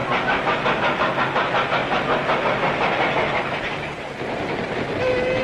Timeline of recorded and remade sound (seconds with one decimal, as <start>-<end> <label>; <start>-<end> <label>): 0.0-5.4 recorded